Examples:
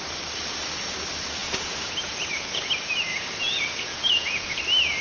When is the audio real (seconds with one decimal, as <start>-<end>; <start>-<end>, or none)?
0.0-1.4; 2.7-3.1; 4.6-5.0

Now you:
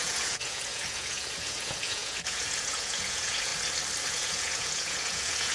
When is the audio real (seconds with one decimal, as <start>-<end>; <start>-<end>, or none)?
3.5-4.1

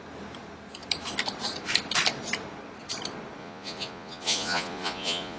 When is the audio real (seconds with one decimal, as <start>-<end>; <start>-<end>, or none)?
0.0-3.4